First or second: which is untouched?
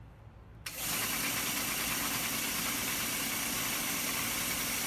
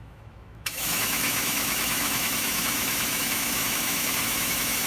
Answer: first